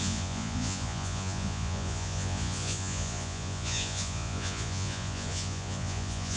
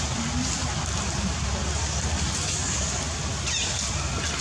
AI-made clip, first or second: first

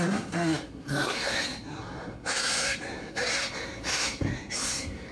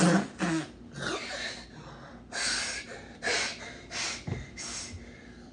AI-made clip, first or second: first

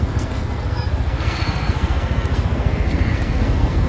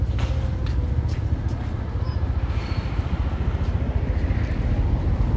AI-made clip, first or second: first